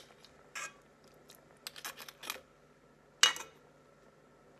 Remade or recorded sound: recorded